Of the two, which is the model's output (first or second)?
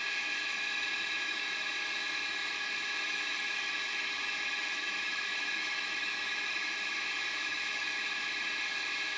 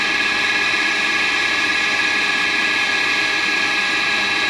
first